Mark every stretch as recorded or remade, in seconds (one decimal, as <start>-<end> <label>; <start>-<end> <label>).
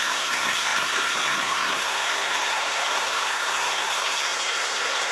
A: 0.0-5.1 remade